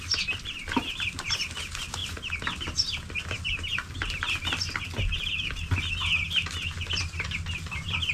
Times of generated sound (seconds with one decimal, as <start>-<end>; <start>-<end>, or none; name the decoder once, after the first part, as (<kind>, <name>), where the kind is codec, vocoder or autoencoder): 2.0-5.9 (vocoder, BigVGAN v2); 7.0-8.1